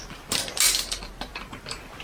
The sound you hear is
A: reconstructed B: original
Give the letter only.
A